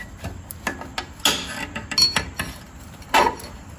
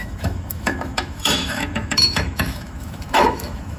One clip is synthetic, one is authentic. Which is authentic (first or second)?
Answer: first